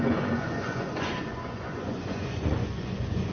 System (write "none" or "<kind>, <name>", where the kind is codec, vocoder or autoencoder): vocoder, Vocos